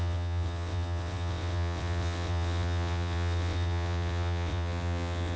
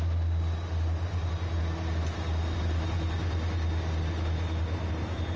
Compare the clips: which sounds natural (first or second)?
second